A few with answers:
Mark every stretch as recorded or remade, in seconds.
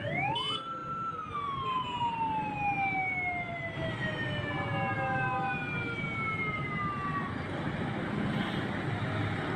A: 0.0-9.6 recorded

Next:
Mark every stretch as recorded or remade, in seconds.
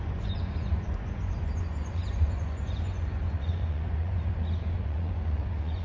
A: 0.0-5.8 remade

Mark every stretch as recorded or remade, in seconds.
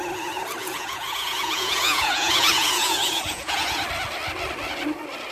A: 0.0-0.6 recorded; 0.6-3.8 remade; 3.8-5.3 recorded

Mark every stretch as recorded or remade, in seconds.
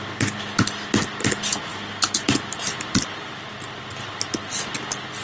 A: 0.0-5.2 recorded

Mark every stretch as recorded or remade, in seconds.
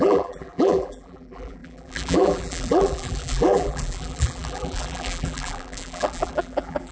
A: 0.0-6.9 remade